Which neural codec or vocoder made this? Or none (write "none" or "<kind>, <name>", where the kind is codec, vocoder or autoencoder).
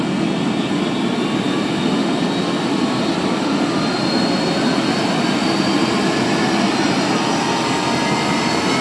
none